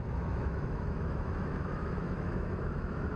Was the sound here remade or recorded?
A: remade